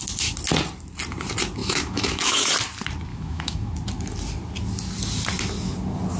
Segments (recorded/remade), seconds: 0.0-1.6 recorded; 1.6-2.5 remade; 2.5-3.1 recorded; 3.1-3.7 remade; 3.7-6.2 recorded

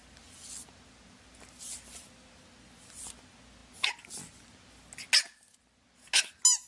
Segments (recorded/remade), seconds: 0.0-6.7 recorded

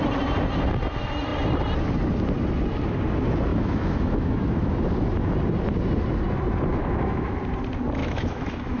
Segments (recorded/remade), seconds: 0.0-3.5 recorded; 3.5-4.7 remade; 4.7-6.7 recorded; 6.7-7.4 remade; 7.4-8.0 recorded; 8.0-8.8 remade

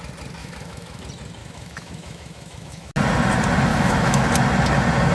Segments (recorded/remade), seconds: 0.0-0.4 recorded; 0.4-1.0 remade; 1.0-1.4 recorded; 1.4-2.9 remade; 2.9-3.7 recorded; 3.7-4.2 remade; 4.2-5.1 recorded

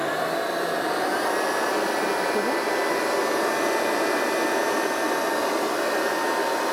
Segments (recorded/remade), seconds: 0.0-6.7 recorded

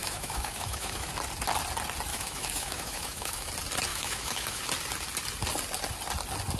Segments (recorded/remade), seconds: 0.0-1.1 remade; 1.1-2.1 recorded; 2.1-3.5 remade; 3.5-3.9 recorded; 3.9-4.6 remade; 4.6-6.6 recorded

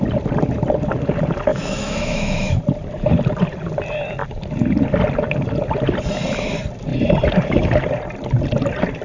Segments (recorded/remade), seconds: 0.0-1.5 recorded; 1.5-2.6 remade; 2.6-9.0 recorded